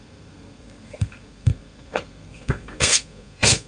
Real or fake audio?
fake